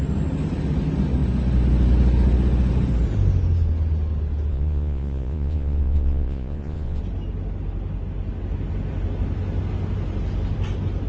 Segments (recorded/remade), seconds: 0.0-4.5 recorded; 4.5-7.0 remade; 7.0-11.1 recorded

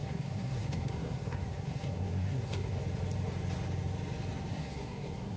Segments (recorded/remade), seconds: 0.0-2.8 remade; 2.8-4.5 recorded; 4.5-5.4 remade